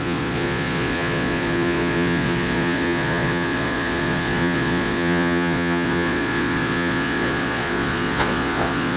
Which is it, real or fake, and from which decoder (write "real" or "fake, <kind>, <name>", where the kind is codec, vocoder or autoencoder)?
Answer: fake, vocoder, Vocos